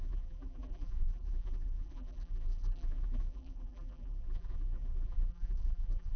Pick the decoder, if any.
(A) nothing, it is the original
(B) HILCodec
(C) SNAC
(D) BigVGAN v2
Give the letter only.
D